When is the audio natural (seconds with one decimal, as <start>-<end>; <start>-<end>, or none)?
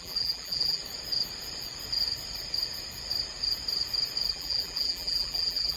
0.8-4.3